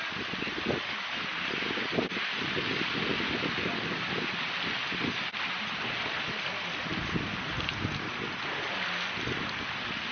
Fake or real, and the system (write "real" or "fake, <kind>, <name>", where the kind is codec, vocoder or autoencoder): real